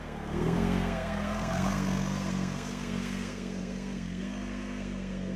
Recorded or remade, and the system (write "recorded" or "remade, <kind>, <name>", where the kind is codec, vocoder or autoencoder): remade, codec, SNAC